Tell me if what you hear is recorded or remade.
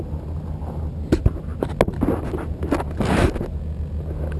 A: recorded